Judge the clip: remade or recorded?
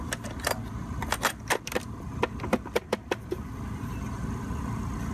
remade